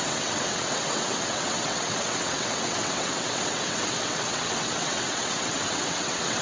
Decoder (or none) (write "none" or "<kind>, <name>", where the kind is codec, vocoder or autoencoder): vocoder, WaveNeXt